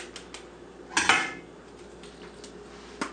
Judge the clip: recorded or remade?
recorded